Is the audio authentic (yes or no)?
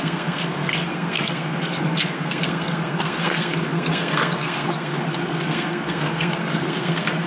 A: no